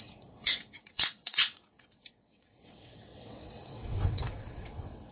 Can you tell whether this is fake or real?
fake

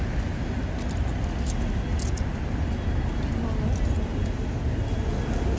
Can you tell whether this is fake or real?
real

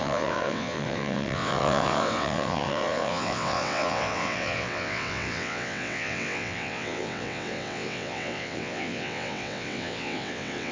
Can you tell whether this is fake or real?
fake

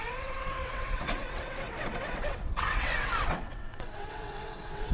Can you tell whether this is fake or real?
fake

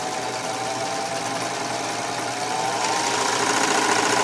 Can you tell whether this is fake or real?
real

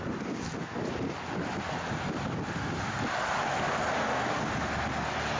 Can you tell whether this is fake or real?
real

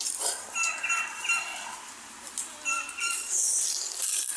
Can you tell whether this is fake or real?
real